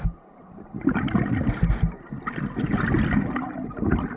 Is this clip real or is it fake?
real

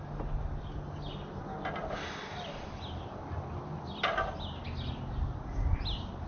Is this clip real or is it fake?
real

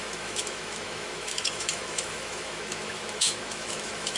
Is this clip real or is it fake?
fake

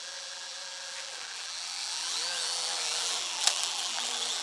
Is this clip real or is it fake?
fake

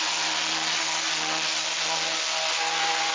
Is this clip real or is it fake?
real